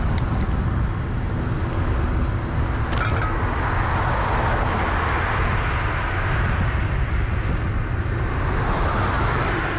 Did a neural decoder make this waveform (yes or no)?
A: no